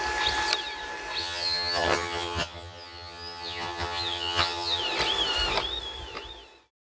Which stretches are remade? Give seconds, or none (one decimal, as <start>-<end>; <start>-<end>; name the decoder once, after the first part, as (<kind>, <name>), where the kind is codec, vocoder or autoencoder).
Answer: 1.2-4.8 (vocoder, HiFi-GAN)